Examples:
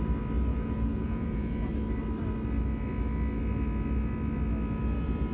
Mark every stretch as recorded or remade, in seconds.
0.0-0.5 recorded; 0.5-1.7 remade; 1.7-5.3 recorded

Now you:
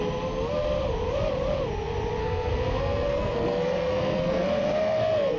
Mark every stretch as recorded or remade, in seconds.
0.0-2.2 recorded; 2.2-5.4 remade

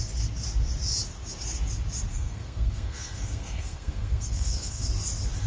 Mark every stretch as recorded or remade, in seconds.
0.0-2.1 recorded; 2.1-4.8 remade; 4.8-5.5 recorded

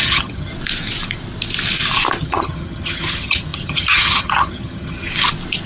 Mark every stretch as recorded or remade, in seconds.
0.0-0.5 remade; 0.5-2.2 recorded; 2.2-5.1 remade; 5.1-5.7 recorded

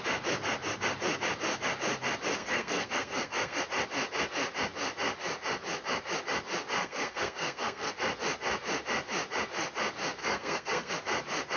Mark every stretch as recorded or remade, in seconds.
0.0-2.4 recorded; 2.4-3.6 remade; 3.6-6.8 recorded; 6.8-7.9 remade; 7.9-10.2 recorded; 10.2-10.9 remade; 10.9-11.6 recorded